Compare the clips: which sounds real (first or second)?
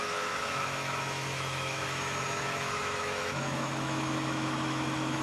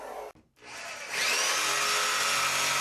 second